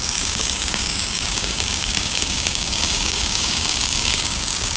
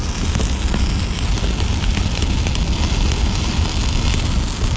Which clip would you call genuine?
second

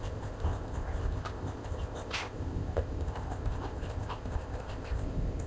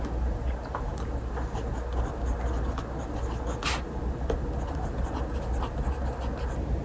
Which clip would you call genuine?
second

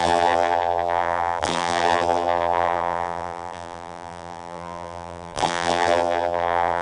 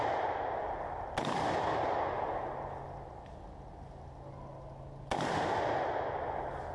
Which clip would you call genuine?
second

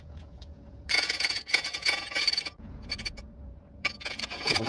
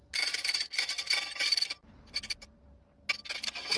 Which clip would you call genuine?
second